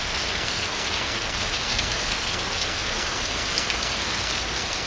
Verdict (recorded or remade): remade